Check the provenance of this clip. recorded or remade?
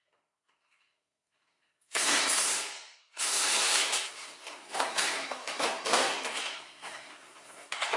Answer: remade